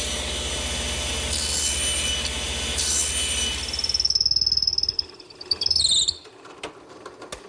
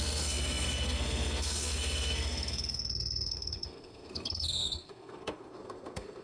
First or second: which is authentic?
first